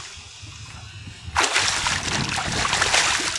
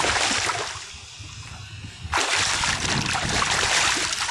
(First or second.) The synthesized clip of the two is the second